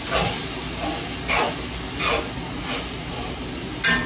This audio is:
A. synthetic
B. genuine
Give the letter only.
B